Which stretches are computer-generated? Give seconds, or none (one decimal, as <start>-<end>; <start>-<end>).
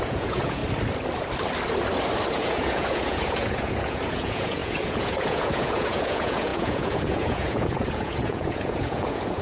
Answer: 0.0-0.6; 2.3-9.4